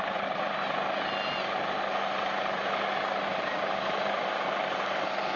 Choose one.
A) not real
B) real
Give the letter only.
B